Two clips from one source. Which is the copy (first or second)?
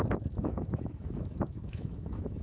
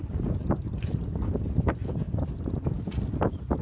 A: first